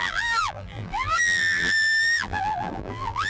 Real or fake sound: fake